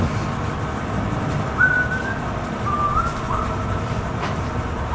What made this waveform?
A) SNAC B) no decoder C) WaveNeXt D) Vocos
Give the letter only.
B